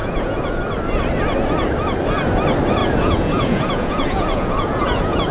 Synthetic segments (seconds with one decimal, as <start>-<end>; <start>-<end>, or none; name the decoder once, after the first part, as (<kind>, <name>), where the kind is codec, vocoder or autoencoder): 0.0-0.6 (vocoder, Vocos); 2.8-5.3